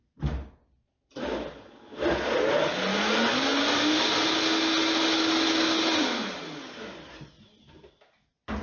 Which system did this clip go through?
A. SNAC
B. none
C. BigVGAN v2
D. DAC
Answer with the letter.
B